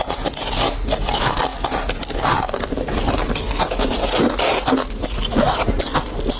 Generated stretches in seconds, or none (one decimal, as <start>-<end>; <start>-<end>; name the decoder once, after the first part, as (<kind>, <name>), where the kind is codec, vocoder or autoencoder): none